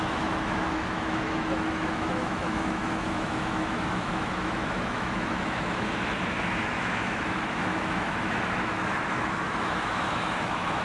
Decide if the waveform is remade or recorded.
remade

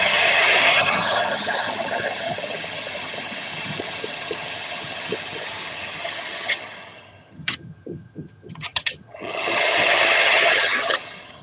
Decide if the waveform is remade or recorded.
remade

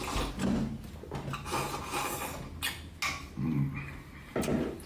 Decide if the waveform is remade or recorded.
recorded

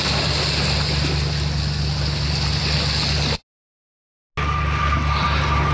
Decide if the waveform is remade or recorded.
recorded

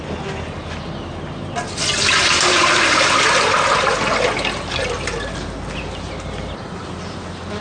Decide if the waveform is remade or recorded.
recorded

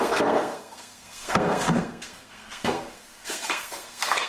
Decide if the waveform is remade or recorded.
remade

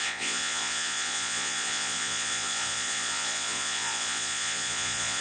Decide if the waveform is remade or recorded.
remade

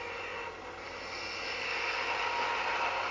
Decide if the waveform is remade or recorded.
recorded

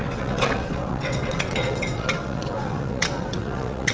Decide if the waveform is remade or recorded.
remade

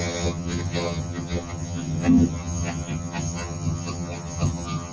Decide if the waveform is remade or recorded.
remade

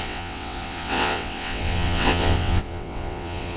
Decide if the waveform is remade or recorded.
remade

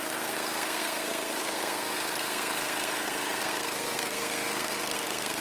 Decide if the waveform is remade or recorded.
remade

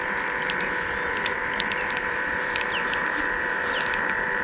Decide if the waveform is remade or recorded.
remade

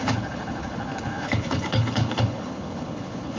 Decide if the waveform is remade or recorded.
remade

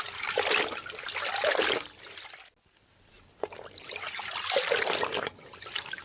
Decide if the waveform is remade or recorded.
recorded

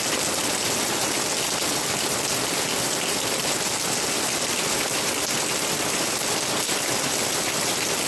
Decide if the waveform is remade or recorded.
recorded